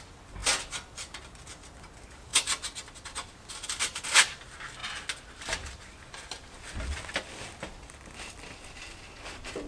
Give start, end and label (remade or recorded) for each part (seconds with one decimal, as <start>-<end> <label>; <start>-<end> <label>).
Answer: 0.0-9.7 recorded